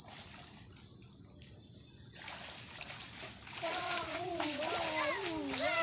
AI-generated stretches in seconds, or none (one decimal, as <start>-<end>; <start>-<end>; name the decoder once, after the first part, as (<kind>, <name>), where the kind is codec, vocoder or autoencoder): 3.7-4.6 (vocoder, Vocos)